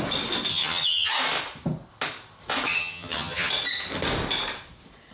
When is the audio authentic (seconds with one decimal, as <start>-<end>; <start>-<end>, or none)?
0.0-0.5; 1.1-2.7; 3.5-5.1